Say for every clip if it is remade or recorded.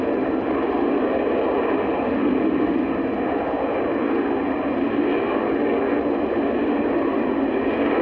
recorded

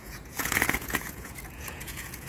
remade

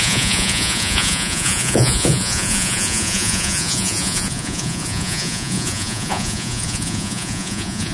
remade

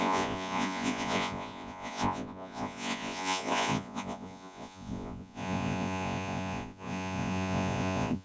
remade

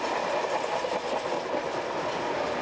recorded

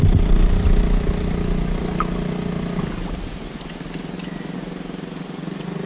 recorded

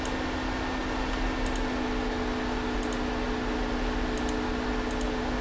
recorded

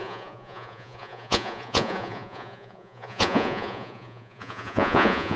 remade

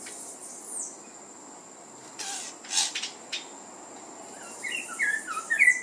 recorded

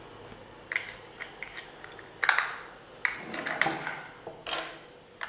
recorded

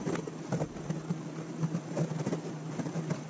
recorded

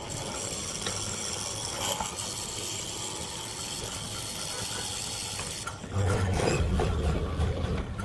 recorded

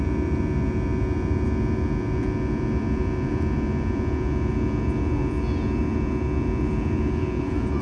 remade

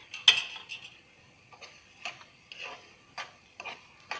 recorded